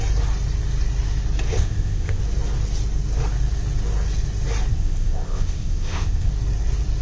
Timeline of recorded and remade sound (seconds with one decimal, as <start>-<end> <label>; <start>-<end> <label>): 0.0-1.5 recorded; 1.5-2.2 remade; 2.2-4.7 recorded; 4.7-6.3 remade; 6.3-7.0 recorded